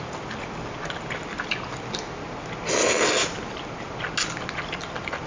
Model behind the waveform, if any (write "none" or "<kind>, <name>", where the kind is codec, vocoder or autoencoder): none